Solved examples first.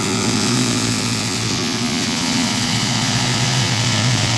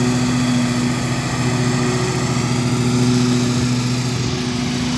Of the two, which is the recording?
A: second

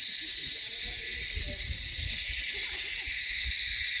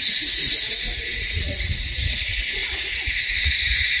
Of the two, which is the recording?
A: first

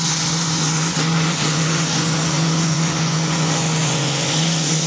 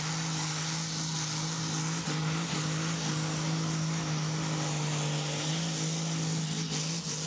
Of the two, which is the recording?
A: second